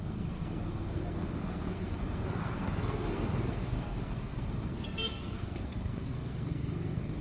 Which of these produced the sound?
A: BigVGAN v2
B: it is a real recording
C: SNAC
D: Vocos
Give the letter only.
C